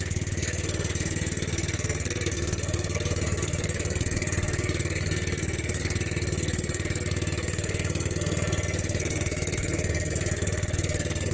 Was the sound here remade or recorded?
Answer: remade